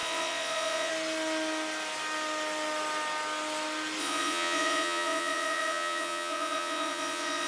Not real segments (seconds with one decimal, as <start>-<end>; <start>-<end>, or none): 0.0-0.9; 4.0-7.5